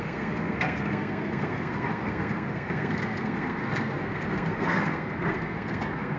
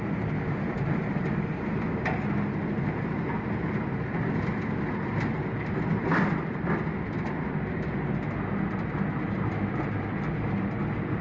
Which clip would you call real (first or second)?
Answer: second